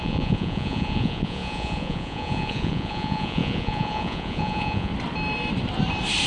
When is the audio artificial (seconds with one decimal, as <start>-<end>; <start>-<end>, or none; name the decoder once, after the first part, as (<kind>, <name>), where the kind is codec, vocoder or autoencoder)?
0.0-4.9 (vocoder, Vocos)